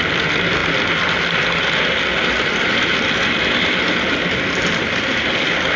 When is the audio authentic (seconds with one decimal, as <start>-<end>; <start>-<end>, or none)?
0.0-5.8